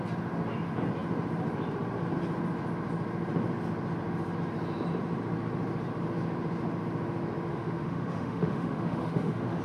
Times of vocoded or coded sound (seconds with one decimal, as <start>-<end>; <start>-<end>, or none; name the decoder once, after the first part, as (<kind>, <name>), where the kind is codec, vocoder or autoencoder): 7.5-9.6 (autoencoder, DAC-VAE)